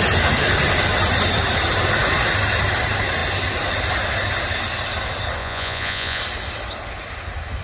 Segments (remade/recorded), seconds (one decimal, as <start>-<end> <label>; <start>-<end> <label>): 0.0-5.4 recorded; 5.4-6.2 remade; 6.2-7.6 recorded